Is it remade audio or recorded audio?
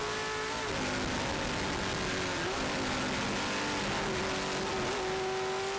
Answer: recorded